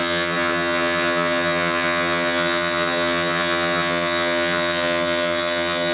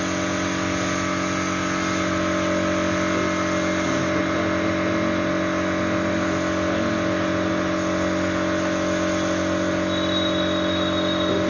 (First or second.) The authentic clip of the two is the second